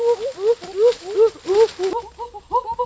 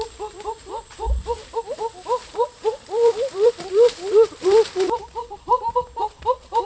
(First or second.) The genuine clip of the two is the first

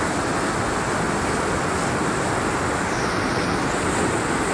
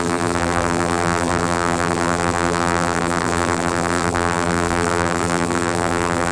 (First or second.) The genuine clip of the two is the first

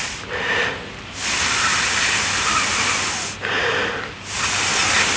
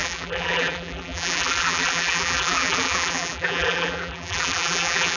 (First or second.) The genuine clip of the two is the first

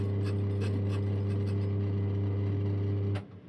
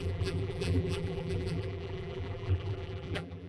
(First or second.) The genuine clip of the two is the first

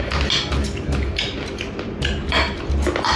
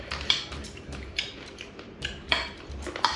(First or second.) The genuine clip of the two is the first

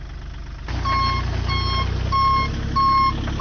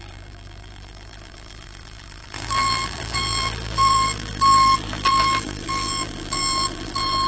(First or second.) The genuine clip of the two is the first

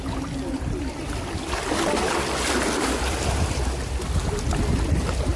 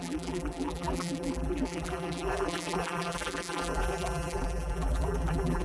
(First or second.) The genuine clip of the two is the first